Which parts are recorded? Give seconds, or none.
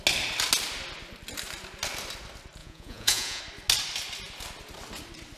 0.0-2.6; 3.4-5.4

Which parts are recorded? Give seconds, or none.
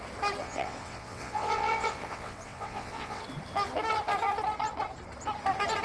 0.0-0.4; 3.2-5.8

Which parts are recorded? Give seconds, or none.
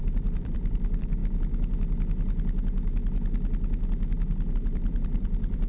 1.2-4.5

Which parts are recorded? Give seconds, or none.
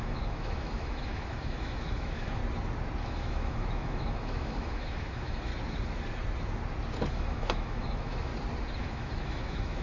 2.4-3.0; 5.5-7.1; 8.3-8.8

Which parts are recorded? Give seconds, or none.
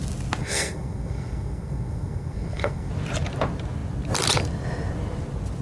0.0-0.4; 2.9-5.6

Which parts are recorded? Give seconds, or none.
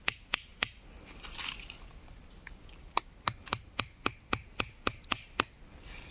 0.0-6.1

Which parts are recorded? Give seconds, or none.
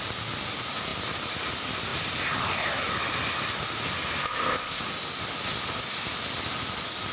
0.0-4.2; 4.8-7.1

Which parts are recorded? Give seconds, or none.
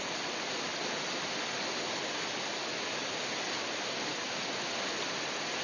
0.0-5.6